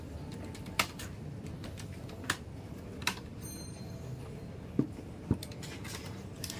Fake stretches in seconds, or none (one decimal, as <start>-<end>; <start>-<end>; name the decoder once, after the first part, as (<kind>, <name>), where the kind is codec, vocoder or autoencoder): none